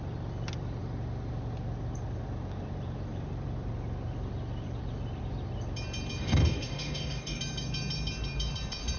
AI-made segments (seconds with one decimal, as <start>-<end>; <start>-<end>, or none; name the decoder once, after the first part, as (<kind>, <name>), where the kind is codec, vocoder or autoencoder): 6.2-7.4 (codec, DAC)